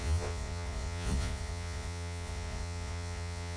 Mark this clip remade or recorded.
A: remade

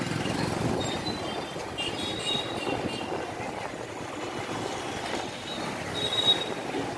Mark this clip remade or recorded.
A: recorded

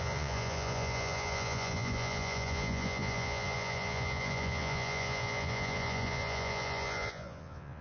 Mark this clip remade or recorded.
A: remade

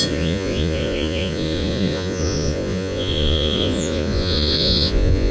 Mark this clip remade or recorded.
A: remade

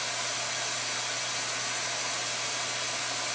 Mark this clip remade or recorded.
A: recorded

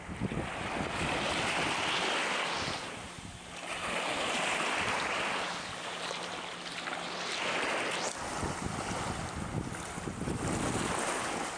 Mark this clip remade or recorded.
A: recorded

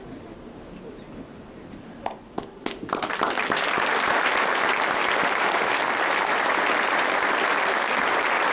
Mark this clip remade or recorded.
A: recorded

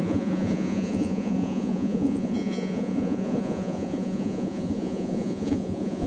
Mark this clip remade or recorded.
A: remade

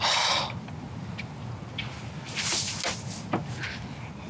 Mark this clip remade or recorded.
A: recorded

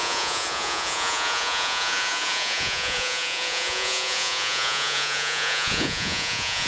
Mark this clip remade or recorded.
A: remade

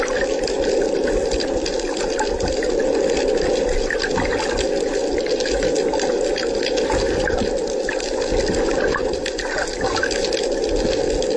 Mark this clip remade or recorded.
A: recorded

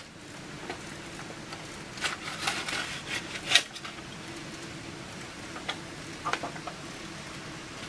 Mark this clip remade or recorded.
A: recorded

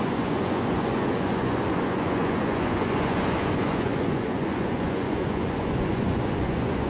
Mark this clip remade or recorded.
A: remade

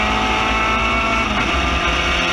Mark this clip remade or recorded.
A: recorded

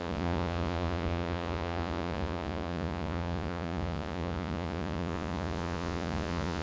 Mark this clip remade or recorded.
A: remade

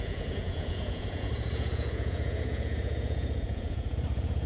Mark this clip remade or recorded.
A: remade